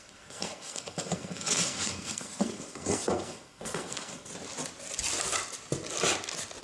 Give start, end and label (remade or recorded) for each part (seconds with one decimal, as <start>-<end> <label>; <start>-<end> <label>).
0.0-4.3 remade; 4.3-6.6 recorded

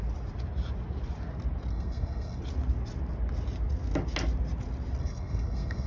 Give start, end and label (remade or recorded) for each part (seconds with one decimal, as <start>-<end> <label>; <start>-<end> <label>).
0.0-1.7 recorded; 1.7-2.4 remade; 2.4-5.0 recorded; 5.0-5.9 remade

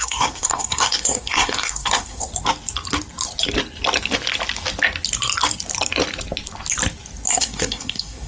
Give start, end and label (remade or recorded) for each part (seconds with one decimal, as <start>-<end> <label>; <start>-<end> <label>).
0.0-2.3 remade; 2.3-7.3 recorded; 7.3-8.3 remade

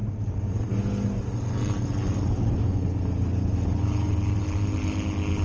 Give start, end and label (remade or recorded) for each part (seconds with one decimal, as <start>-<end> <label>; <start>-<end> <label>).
0.0-5.4 recorded

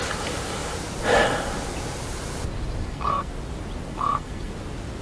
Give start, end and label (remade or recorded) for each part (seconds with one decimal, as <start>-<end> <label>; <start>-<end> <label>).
0.0-2.8 recorded; 2.8-3.3 remade; 3.3-3.9 recorded; 3.9-4.5 remade; 4.5-5.0 recorded

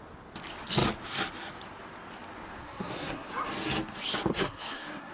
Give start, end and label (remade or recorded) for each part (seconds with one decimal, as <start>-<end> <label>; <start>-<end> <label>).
0.0-2.6 recorded; 2.6-3.3 remade; 3.3-4.3 recorded; 4.3-5.1 remade